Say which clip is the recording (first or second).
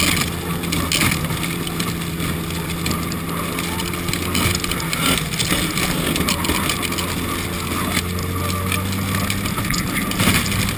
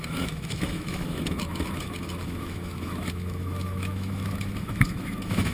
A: first